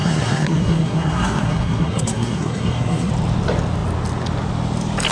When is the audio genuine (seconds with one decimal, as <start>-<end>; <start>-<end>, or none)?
3.1-5.1